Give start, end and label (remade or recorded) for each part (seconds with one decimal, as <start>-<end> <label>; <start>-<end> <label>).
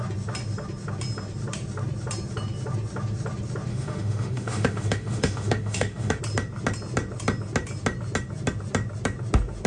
0.0-3.7 recorded; 3.7-6.2 remade; 6.2-9.7 recorded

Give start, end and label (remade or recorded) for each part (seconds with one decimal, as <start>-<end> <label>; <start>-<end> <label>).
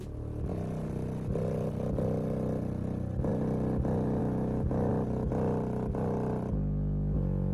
0.0-4.2 recorded; 4.2-4.9 remade; 4.9-7.5 recorded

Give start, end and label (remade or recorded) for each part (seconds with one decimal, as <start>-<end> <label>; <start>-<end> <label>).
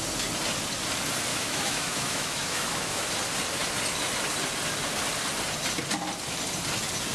0.0-1.3 recorded; 1.3-3.1 remade; 3.1-7.1 recorded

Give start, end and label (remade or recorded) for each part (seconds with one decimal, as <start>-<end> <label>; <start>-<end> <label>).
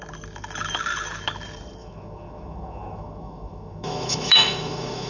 0.0-1.8 recorded; 1.8-5.1 remade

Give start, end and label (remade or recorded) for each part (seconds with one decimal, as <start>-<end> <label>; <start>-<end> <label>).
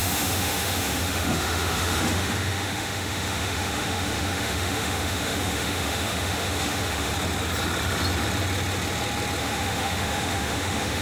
0.0-7.1 remade; 7.1-9.4 recorded; 9.4-11.0 remade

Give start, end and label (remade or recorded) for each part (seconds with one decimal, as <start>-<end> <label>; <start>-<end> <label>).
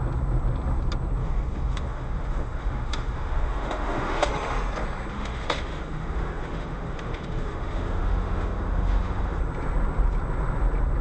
0.0-1.2 recorded; 1.2-4.3 remade; 4.3-5.1 recorded; 5.1-9.4 remade; 9.4-11.0 recorded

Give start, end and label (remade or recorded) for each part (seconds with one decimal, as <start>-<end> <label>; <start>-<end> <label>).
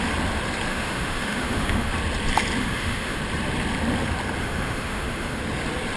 0.0-0.7 recorded; 0.7-1.9 remade; 1.9-2.6 recorded; 2.6-3.2 remade; 3.2-4.4 recorded; 4.4-5.4 remade; 5.4-6.0 recorded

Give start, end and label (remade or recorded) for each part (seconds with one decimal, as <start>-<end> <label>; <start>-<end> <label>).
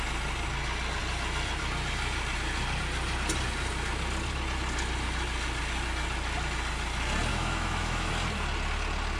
0.0-7.3 recorded; 7.3-8.1 remade; 8.1-9.2 recorded